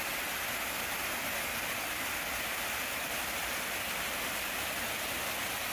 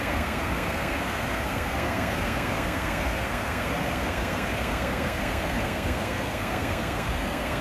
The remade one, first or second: second